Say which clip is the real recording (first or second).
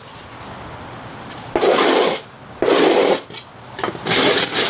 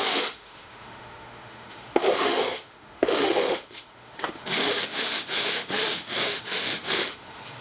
first